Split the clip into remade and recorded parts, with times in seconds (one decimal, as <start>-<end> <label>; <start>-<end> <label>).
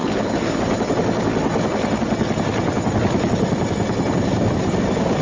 0.0-0.6 remade; 0.6-5.2 recorded